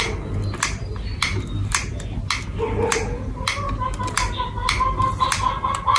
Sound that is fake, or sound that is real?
real